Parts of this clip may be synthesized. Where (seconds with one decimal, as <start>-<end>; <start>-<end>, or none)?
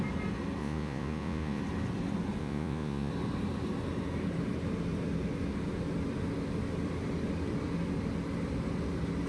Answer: 0.6-1.6; 2.4-3.1